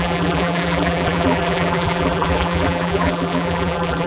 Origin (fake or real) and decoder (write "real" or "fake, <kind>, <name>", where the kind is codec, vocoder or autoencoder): fake, vocoder, BigVGAN v2